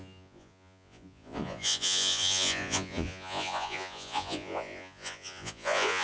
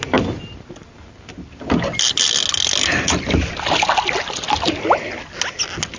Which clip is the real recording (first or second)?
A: second